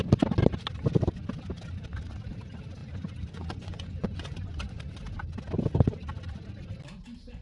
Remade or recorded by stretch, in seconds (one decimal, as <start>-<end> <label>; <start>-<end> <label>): 0.0-2.8 recorded; 2.8-4.8 remade; 4.8-7.4 recorded